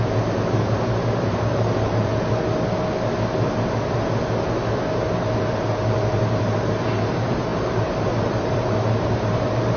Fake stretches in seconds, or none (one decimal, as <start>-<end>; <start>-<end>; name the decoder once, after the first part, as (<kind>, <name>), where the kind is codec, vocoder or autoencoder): 0.0-2.1 (vocoder, BigVGAN v2); 6.1-9.8